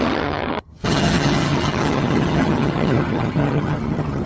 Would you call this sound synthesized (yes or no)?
yes